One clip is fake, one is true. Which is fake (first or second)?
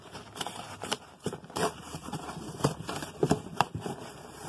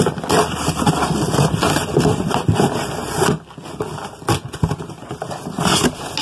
first